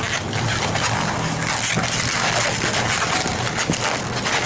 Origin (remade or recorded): recorded